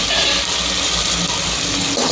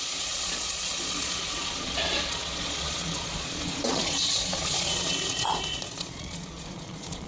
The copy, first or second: second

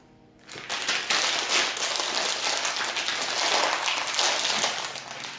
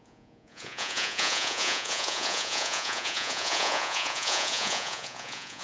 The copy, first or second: second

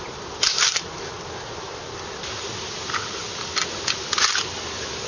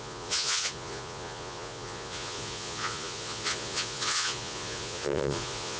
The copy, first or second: second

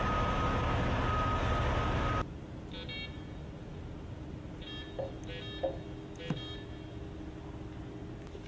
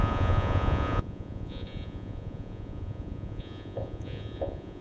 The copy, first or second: second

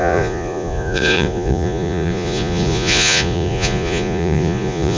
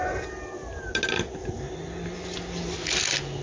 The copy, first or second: first